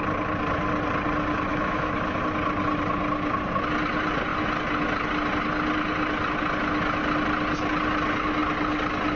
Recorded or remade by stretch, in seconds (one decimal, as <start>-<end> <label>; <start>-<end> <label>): 0.0-1.5 recorded; 1.5-2.2 remade; 2.2-9.2 recorded

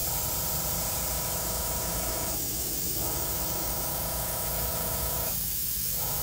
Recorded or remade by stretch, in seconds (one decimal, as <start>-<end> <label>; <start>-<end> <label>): 0.0-1.1 recorded; 1.1-6.2 remade

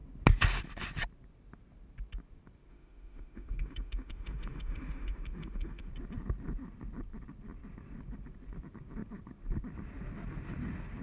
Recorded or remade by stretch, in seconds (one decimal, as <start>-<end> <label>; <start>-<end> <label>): 0.0-2.7 recorded; 2.7-5.9 remade; 5.9-11.0 recorded

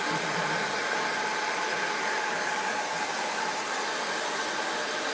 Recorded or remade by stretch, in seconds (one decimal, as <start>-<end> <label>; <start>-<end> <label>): 0.0-5.1 recorded

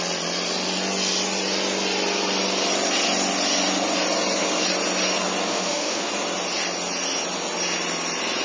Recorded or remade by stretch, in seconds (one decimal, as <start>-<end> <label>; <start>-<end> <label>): 0.0-5.5 recorded; 5.5-6.1 remade; 6.1-8.4 recorded

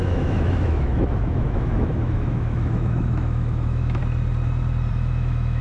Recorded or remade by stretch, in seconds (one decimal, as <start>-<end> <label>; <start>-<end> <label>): 0.0-4.0 remade; 4.0-4.9 recorded; 4.9-5.6 remade

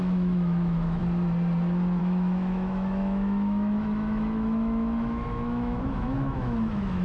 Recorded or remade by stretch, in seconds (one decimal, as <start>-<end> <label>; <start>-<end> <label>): 0.0-1.0 remade; 1.0-2.0 recorded; 2.0-7.0 remade

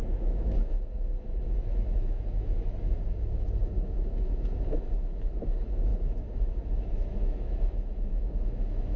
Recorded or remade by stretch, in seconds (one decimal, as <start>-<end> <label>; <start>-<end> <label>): 0.0-9.0 remade